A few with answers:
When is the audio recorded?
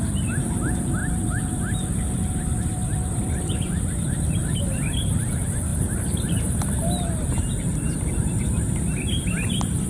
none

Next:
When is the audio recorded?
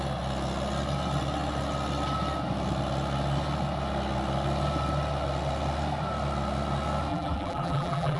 0.0-7.1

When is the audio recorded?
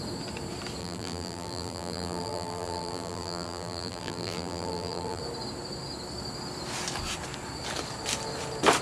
0.0-0.8; 5.2-8.8